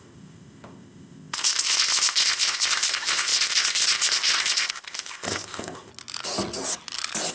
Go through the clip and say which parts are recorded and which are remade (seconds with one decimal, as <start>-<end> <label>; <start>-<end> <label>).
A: 0.0-5.9 remade; 5.9-7.3 recorded